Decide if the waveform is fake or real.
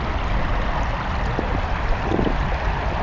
real